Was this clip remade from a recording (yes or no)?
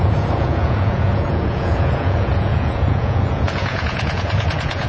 yes